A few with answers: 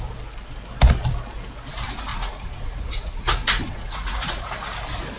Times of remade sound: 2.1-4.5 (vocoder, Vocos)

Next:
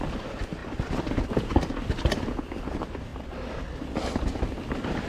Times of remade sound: none

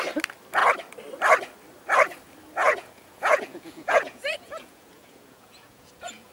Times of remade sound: 2.6-6.3 (vocoder, Vocos)